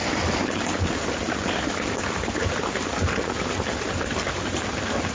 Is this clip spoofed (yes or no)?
no